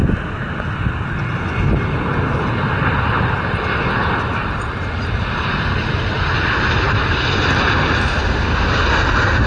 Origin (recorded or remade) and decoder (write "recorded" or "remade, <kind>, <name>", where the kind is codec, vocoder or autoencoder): recorded